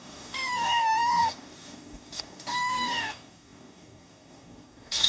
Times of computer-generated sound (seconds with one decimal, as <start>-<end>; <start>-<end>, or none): 0.0-5.1